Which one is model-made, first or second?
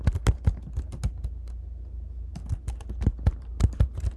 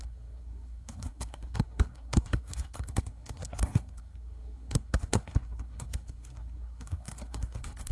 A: second